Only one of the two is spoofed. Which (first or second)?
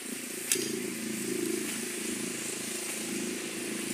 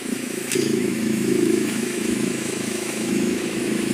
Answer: second